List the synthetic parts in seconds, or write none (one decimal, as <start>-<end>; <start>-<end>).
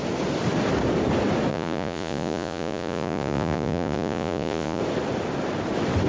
1.5-4.8